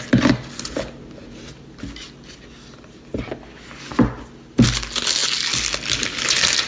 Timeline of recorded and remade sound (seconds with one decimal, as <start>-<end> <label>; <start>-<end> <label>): 0.0-6.7 recorded